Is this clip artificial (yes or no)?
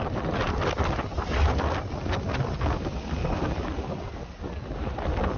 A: no